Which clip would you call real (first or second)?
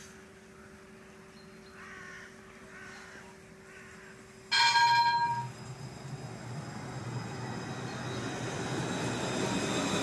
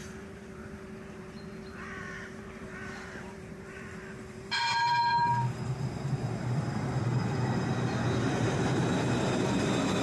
first